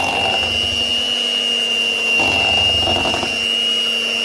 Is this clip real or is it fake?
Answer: real